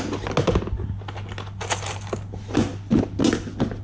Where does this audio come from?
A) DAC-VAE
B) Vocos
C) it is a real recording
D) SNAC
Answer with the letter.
C